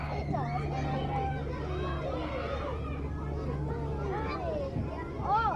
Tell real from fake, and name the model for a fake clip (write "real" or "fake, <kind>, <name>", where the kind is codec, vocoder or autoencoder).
real